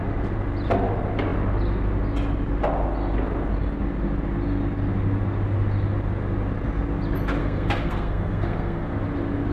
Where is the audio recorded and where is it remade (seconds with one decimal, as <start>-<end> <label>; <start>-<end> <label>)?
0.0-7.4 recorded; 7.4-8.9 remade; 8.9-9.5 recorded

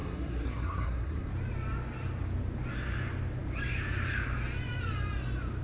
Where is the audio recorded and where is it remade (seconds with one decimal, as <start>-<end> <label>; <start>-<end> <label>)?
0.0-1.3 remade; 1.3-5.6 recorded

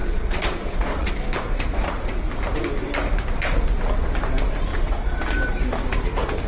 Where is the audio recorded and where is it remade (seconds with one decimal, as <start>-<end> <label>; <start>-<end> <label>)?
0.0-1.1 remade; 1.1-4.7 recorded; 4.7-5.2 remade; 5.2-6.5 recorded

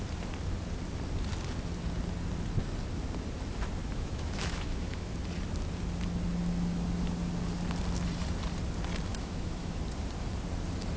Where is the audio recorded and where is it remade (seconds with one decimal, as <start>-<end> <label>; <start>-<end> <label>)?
0.0-3.8 recorded; 3.8-5.1 remade; 5.1-9.1 recorded; 9.1-9.8 remade; 9.8-11.0 recorded

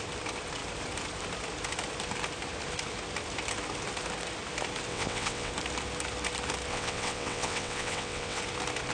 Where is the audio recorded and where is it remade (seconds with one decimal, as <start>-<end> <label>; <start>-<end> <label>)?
0.0-4.9 recorded; 4.9-5.5 remade; 5.5-6.7 recorded; 6.7-8.4 remade; 8.4-8.9 recorded

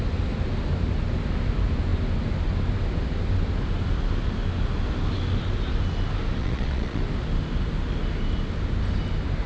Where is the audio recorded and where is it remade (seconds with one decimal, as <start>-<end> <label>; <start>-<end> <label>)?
0.0-6.4 recorded; 6.4-7.0 remade; 7.0-9.5 recorded

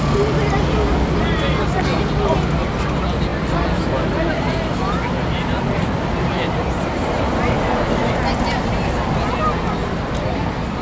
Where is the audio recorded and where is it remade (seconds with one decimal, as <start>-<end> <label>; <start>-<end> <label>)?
0.0-10.8 recorded